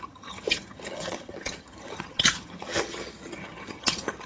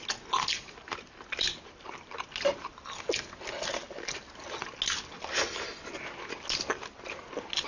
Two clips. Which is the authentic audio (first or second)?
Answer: second